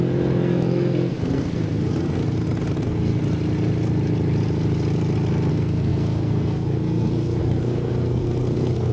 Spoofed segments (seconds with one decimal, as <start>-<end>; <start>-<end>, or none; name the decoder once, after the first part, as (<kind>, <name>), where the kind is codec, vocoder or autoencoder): 0.0-2.2 (codec, SNAC); 2.8-3.2; 5.5-8.9